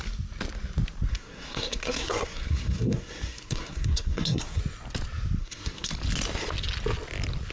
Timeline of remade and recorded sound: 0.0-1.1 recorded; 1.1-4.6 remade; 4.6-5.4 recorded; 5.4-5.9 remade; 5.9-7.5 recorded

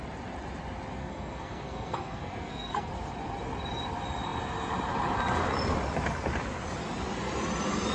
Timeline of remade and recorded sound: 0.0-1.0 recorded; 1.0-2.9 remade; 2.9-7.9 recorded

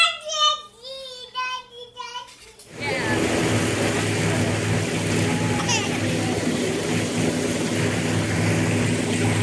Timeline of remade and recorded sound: 0.0-9.4 recorded